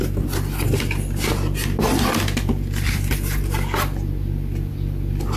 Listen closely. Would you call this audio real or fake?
real